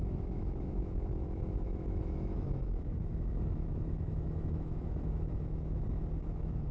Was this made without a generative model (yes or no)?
no